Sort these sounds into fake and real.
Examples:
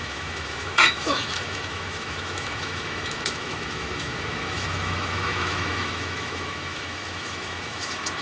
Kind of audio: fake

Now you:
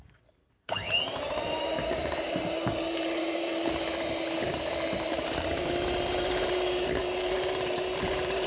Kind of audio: fake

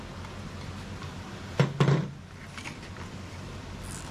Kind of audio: real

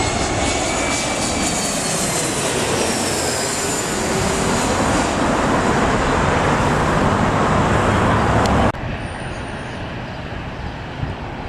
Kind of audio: real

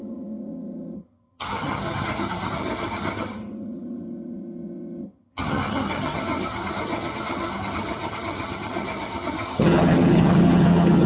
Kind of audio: fake